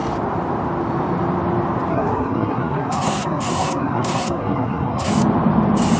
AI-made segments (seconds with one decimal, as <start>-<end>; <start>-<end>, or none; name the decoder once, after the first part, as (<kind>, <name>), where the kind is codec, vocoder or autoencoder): 1.9-5.1 (codec, SNAC)